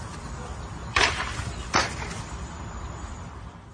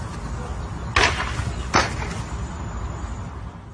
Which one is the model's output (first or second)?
first